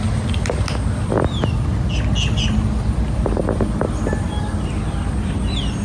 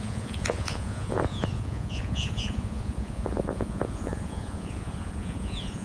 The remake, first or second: second